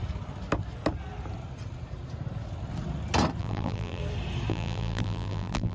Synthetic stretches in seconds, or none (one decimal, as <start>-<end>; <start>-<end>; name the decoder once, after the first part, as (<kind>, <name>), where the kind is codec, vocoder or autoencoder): 3.4-4.0 (vocoder, BigVGAN v2); 4.5-5.7